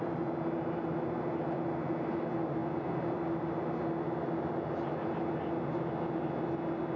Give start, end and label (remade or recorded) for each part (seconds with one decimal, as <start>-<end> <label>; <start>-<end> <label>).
0.0-7.0 recorded